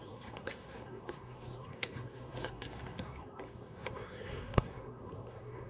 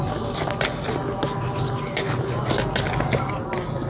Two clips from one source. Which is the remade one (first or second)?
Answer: first